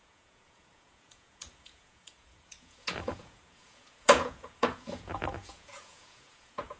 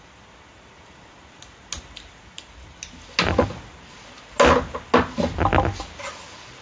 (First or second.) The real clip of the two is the second